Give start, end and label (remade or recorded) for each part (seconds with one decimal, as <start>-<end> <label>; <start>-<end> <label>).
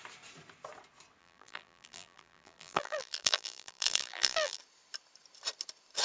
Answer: 0.0-1.2 recorded; 1.2-4.6 remade; 4.6-6.0 recorded